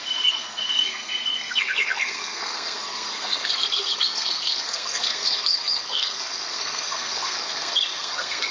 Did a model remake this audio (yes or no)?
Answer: yes